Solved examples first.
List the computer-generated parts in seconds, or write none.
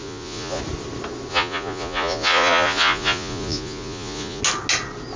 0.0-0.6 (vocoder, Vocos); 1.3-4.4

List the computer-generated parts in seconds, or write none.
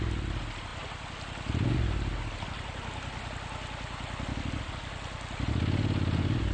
none